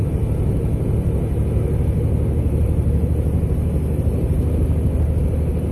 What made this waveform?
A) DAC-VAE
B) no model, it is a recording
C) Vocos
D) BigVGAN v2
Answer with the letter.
B